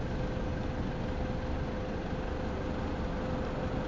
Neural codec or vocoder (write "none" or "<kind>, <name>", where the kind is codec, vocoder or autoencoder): none